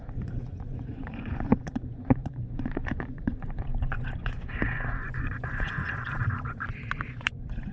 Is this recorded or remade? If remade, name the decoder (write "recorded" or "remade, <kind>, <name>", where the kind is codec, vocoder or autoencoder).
remade, vocoder, Vocos